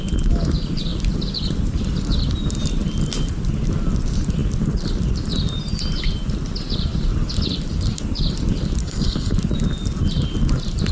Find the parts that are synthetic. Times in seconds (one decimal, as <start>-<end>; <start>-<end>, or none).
8.8-9.3